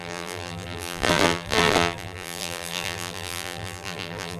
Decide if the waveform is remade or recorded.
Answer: remade